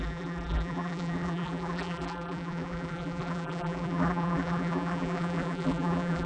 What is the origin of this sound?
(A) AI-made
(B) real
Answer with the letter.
A